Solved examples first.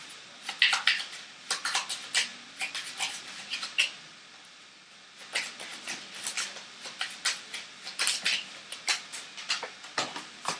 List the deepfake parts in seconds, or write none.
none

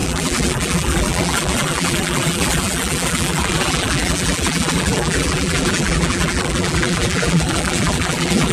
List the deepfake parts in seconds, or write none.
0.0-8.5 (vocoder, BigVGAN v2)

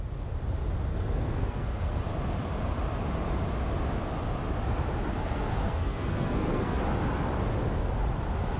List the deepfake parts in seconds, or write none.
0.9-2.0 (codec, SNAC); 5.1-6.8

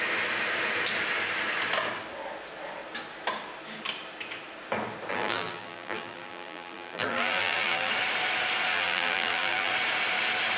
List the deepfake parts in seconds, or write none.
5.1-7.9 (vocoder, BigVGAN v2); 8.7-9.7

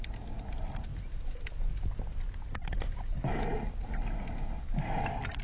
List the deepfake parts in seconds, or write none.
3.5-4.9 (vocoder, BigVGAN v2)